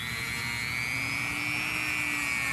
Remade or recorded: recorded